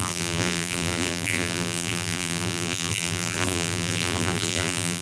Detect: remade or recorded remade